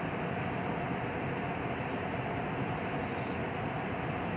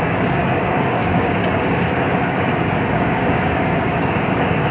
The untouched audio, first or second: first